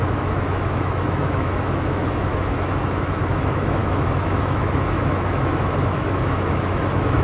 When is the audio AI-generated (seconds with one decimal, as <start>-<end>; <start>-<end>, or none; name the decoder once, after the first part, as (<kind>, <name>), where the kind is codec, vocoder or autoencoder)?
0.0-7.2 (autoencoder, DAC-VAE)